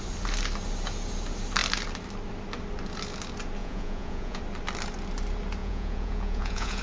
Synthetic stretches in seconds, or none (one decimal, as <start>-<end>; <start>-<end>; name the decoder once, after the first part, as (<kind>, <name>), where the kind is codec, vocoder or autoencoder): 3.6-4.4 (vocoder, Vocos); 5.6-6.8